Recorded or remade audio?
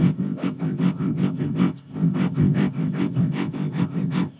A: remade